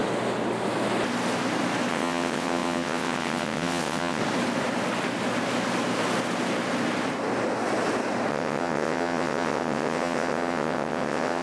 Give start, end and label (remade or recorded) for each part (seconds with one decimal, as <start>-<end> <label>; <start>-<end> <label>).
0.0-1.9 recorded; 1.9-4.2 remade; 4.2-8.3 recorded; 8.3-11.4 remade